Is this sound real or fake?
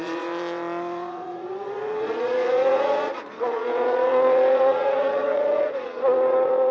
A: fake